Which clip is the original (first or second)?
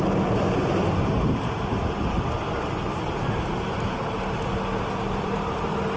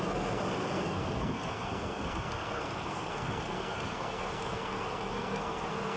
first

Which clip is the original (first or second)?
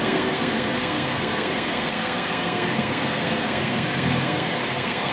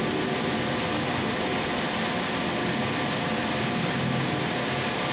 second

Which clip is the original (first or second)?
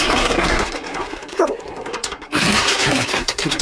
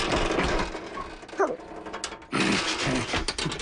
second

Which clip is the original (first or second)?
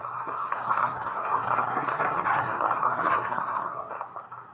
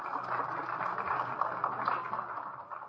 second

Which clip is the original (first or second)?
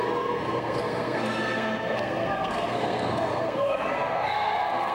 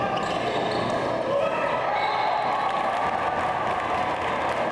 second